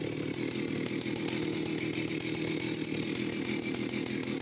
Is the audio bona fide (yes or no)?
yes